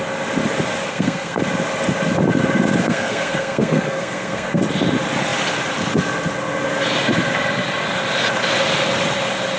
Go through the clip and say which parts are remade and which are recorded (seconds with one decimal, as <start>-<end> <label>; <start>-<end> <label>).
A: 0.0-0.9 recorded; 0.9-1.4 remade; 1.4-2.8 recorded; 2.8-4.6 remade; 4.6-9.6 recorded

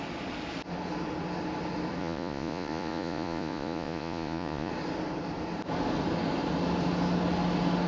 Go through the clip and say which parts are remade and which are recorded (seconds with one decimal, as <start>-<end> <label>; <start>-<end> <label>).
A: 0.0-2.0 recorded; 2.0-4.7 remade; 4.7-7.9 recorded

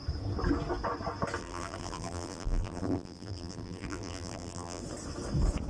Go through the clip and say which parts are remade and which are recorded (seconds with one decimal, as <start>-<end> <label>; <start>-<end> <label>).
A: 0.0-1.4 recorded; 1.4-4.8 remade; 4.8-5.7 recorded